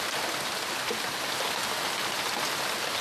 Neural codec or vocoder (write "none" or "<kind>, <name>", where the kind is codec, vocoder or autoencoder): none